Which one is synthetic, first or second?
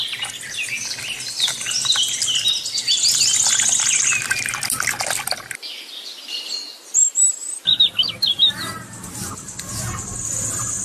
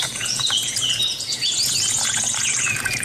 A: second